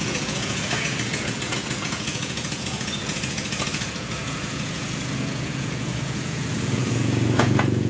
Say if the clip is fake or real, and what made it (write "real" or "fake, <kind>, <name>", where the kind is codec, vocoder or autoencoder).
fake, vocoder, Vocos